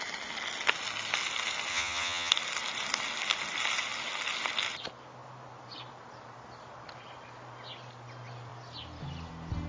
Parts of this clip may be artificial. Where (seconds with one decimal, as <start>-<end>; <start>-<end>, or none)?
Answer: 1.7-2.3